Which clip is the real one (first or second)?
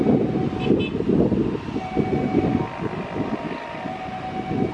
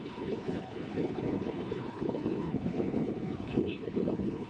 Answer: first